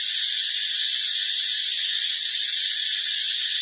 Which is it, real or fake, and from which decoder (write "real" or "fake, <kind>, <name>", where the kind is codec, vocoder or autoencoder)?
fake, vocoder, Vocos